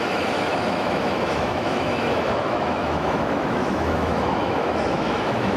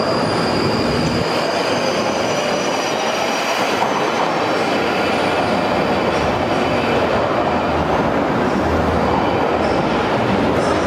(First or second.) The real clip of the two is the second